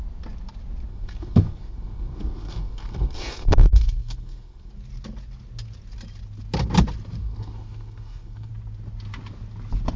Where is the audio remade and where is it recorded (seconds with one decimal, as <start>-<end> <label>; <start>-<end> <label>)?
0.0-0.9 recorded; 0.9-4.7 remade; 4.7-7.2 recorded; 7.2-8.5 remade; 8.5-10.0 recorded